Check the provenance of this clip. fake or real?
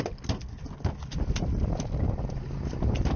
real